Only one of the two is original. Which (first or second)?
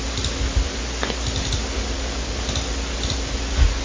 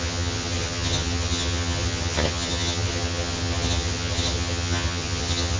first